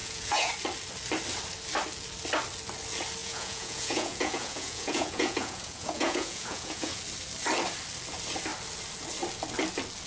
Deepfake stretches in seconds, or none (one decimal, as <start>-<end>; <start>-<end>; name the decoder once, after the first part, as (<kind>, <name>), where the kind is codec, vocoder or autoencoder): 0.0-0.5 (vocoder, Vocos); 3.2-7.0